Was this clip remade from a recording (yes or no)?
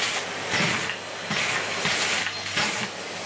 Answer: no